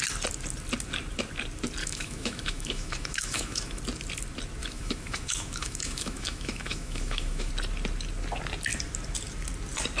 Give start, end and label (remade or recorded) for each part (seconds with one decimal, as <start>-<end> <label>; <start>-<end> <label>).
0.0-1.8 recorded; 1.8-3.8 remade; 3.8-4.6 recorded; 4.6-7.5 remade; 7.5-10.0 recorded